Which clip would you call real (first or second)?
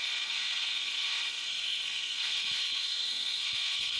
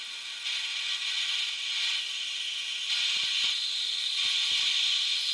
second